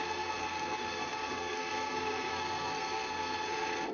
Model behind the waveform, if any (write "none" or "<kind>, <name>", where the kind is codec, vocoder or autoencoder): codec, SNAC